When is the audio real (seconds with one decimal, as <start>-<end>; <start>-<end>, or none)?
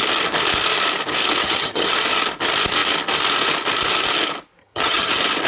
0.0-1.4; 1.9-4.6; 5.1-5.5